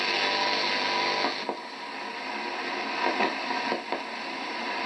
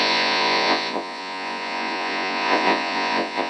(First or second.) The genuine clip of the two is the first